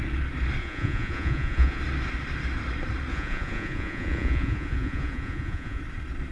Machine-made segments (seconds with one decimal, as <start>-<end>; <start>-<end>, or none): 0.6-1.8; 3.1-5.8